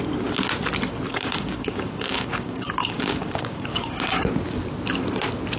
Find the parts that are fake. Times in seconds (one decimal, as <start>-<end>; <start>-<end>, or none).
1.1-4.2